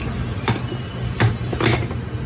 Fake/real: real